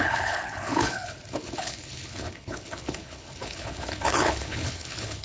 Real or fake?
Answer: fake